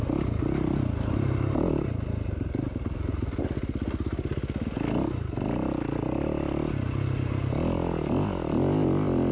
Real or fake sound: real